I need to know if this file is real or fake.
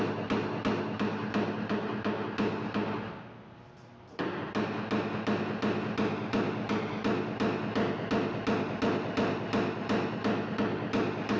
real